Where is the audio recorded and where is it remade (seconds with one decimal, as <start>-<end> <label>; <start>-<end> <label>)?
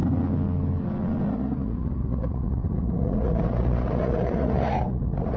0.0-1.3 recorded; 1.3-5.4 remade